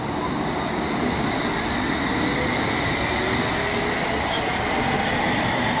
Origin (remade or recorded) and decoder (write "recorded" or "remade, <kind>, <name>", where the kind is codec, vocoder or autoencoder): recorded